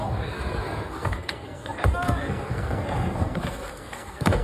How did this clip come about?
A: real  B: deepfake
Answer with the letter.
B